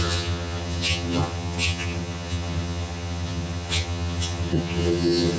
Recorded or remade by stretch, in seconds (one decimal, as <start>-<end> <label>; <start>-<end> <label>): 0.0-5.4 remade